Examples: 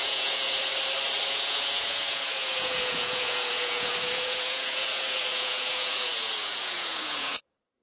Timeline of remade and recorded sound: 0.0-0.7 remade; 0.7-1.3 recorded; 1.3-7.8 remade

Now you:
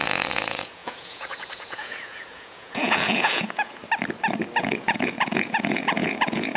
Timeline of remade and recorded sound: 0.0-3.8 remade; 3.8-4.6 recorded; 4.6-6.6 remade

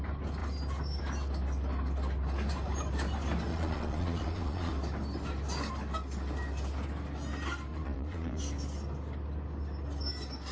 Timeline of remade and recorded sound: 0.0-3.5 recorded; 3.5-4.7 remade; 4.7-7.7 recorded; 7.7-8.4 remade; 8.4-10.5 recorded

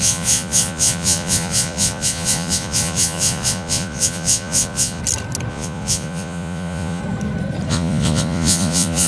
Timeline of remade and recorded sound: 0.0-5.0 remade; 5.0-5.5 recorded; 5.5-7.0 remade; 7.0-7.7 recorded; 7.7-9.1 remade

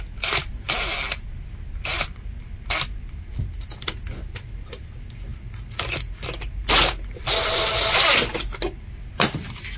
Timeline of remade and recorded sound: 0.0-9.8 recorded

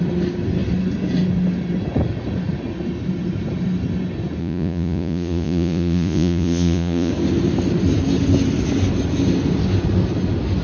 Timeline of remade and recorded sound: 0.0-4.4 recorded; 4.4-7.1 remade; 7.1-10.6 recorded

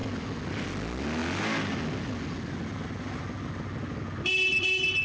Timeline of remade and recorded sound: 0.0-5.0 recorded

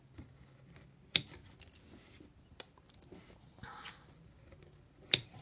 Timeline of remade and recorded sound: 0.0-5.4 recorded